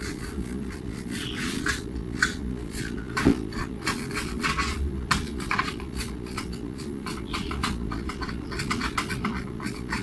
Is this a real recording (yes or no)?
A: no